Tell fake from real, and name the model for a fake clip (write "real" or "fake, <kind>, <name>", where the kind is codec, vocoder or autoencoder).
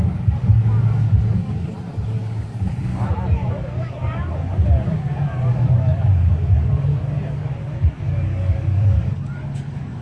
fake, codec, DAC